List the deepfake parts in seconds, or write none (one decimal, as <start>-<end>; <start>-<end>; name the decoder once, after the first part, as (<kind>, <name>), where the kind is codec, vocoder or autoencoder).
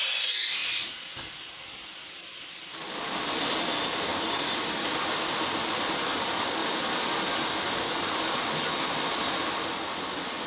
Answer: none